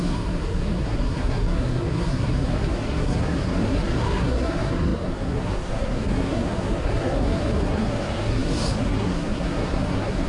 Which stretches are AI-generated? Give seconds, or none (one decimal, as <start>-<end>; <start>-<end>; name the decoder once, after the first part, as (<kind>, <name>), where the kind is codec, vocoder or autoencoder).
0.0-10.3 (codec, SNAC)